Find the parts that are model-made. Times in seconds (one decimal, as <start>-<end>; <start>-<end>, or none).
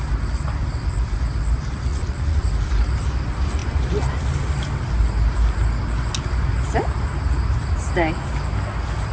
1.9-2.4